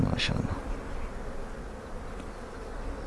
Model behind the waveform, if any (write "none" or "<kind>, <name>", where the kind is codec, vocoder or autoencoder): none